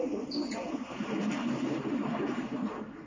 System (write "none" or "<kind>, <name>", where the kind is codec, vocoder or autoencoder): vocoder, BigVGAN v2